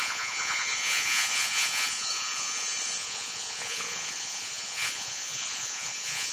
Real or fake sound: fake